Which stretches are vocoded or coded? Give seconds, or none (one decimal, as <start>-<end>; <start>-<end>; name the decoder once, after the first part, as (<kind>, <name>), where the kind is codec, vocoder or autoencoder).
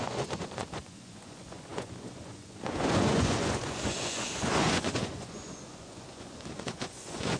0.0-7.4 (vocoder, Vocos)